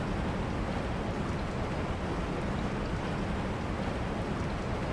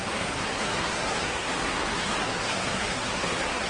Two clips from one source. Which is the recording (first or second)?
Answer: first